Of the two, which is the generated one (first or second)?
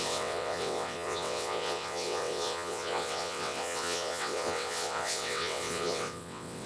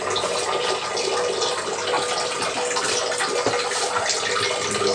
first